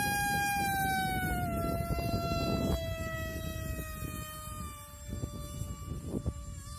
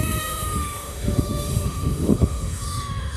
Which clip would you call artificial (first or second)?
second